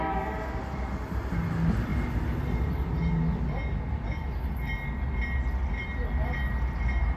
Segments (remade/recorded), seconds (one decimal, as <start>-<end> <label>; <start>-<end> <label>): 0.0-7.2 recorded